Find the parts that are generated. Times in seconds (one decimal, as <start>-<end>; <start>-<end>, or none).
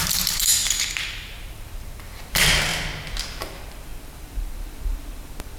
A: 0.0-0.6; 1.5-2.7; 3.3-5.6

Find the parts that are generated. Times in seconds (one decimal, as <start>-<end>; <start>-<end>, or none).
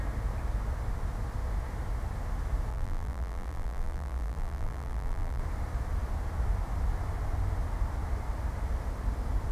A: 2.7-5.4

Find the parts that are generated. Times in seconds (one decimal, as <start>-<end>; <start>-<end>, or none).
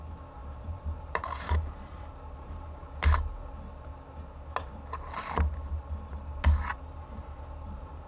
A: 0.0-2.8; 6.7-8.1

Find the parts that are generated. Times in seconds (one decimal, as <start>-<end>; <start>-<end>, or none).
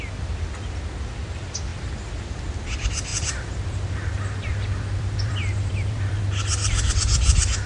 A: 3.1-6.2